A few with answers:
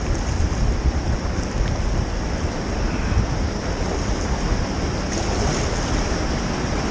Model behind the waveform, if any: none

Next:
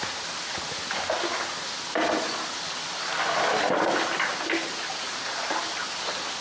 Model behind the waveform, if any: none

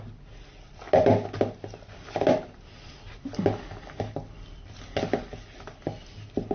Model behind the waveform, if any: none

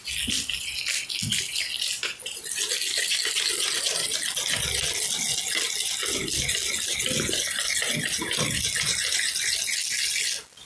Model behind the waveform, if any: none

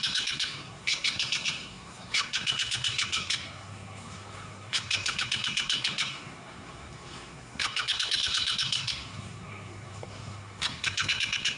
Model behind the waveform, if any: codec, SNAC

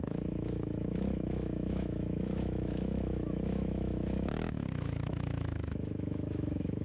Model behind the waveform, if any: autoencoder, DAC-VAE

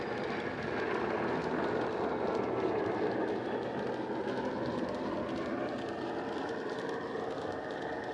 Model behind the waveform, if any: none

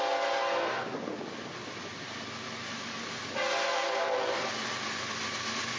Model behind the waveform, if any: none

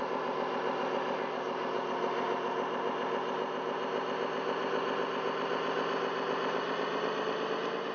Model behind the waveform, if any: none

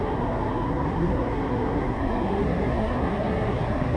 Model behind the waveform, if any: codec, SNAC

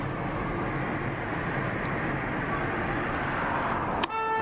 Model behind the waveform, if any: none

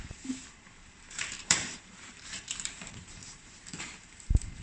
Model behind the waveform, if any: vocoder, BigVGAN v2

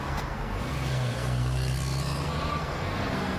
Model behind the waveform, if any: codec, SNAC